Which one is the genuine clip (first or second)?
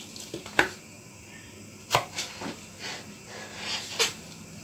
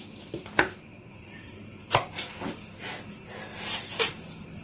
first